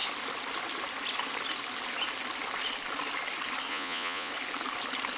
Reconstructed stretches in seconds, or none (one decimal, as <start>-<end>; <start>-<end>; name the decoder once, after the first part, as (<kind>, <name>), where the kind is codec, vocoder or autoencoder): 3.7-4.3 (vocoder, Vocos)